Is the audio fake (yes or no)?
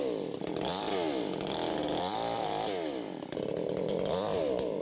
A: no